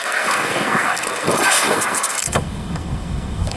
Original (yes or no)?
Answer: no